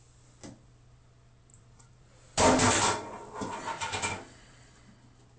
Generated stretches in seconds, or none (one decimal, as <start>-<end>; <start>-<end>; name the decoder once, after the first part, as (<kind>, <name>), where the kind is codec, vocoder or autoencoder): 1.5-4.7 (vocoder, BigVGAN v2)